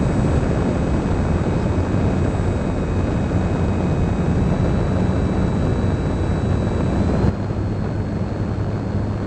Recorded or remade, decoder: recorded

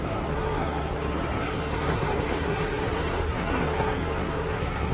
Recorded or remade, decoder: remade, codec, SNAC